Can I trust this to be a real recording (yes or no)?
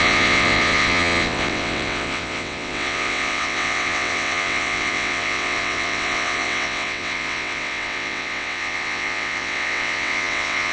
no